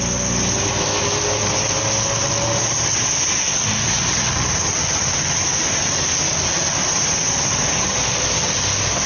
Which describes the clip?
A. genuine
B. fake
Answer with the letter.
A